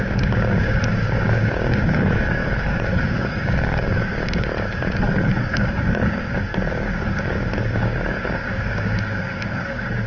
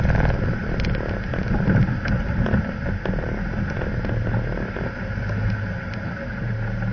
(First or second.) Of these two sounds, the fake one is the first